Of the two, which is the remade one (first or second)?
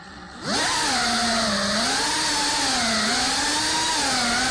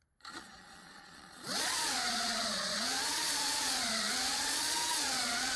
second